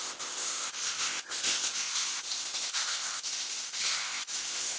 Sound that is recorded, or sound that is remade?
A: remade